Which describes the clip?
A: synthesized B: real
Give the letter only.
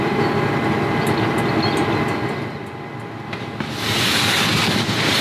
B